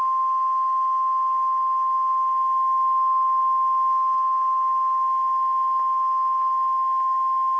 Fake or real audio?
real